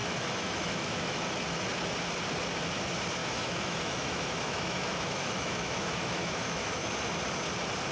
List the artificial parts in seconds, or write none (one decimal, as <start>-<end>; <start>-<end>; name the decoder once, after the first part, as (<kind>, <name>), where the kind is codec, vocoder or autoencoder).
0.0-1.2 (autoencoder, DAC-VAE); 3.2-6.8

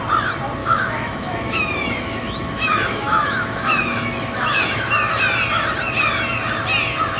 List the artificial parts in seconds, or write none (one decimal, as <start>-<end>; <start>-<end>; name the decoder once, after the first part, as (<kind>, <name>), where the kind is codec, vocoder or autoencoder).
0.6-4.9 (autoencoder, DAC-VAE)